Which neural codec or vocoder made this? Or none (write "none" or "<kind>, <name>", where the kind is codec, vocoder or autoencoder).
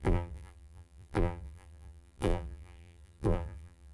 vocoder, BigVGAN v2